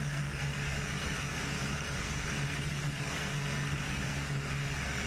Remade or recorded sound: remade